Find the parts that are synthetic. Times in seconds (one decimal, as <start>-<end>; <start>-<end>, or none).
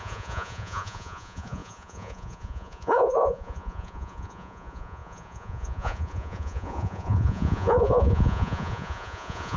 0.0-9.6